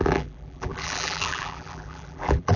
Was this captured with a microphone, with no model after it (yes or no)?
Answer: no